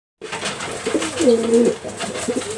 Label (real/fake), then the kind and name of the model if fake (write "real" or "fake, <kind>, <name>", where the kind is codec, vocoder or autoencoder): real